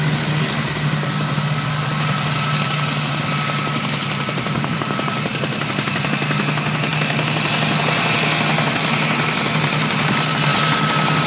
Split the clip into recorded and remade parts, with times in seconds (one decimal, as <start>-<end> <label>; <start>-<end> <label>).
0.0-11.3 recorded